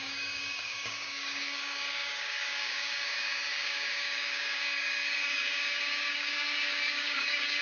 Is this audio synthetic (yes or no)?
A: yes